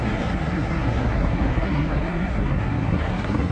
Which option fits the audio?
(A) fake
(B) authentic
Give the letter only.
A